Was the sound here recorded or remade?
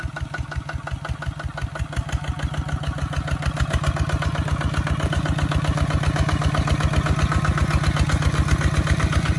recorded